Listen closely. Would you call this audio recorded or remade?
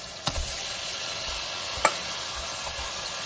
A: remade